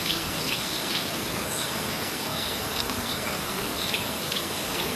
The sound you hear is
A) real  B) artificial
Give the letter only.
B